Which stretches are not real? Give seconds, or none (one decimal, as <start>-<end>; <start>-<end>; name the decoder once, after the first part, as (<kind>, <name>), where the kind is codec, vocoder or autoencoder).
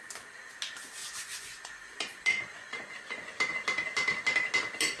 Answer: 1.0-3.5 (vocoder, Vocos)